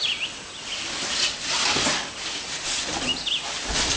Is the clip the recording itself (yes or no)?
yes